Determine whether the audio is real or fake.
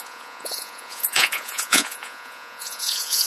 fake